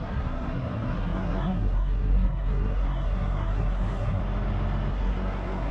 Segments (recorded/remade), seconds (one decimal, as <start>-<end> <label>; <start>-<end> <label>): 0.0-4.2 remade; 4.2-4.9 recorded; 4.9-5.7 remade